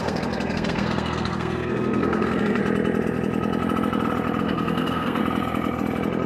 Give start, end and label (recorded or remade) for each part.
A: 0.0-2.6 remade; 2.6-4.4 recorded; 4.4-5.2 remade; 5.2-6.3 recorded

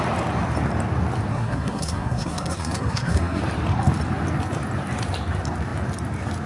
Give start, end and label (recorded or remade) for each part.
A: 0.0-1.3 recorded; 1.3-3.4 remade; 3.4-6.5 recorded

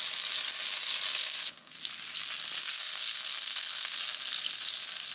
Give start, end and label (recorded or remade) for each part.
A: 0.0-1.2 recorded; 1.2-1.8 remade; 1.8-2.6 recorded; 2.6-4.0 remade; 4.0-5.1 recorded

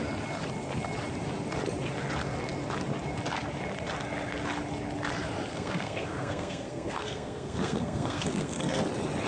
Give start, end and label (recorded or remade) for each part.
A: 0.0-5.5 recorded; 5.5-8.8 remade; 8.8-9.3 recorded

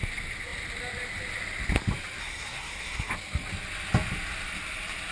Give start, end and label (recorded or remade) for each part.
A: 0.0-2.2 recorded; 2.2-3.1 remade; 3.1-5.1 recorded

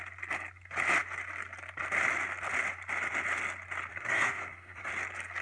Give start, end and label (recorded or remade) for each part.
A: 0.0-3.9 recorded; 3.9-4.9 remade; 4.9-5.4 recorded